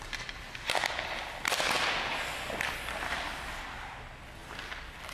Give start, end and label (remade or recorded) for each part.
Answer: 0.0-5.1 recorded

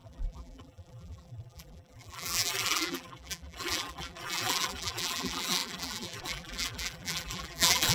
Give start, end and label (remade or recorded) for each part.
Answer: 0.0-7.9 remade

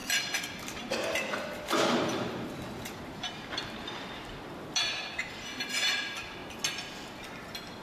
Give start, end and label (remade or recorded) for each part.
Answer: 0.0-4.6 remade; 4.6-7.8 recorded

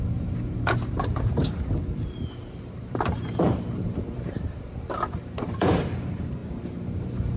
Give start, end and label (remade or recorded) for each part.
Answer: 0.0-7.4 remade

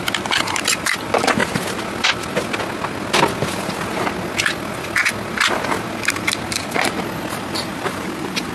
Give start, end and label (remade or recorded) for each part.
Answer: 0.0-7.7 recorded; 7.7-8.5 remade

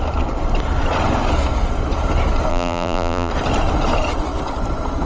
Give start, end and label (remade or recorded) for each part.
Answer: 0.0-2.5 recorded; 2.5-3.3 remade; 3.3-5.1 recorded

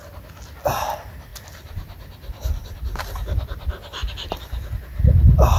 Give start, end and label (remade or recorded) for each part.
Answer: 0.0-1.3 recorded; 1.3-4.7 remade; 4.7-5.6 recorded

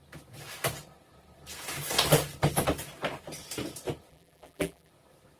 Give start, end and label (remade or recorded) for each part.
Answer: 0.0-4.1 recorded; 4.1-4.9 remade; 4.9-5.4 recorded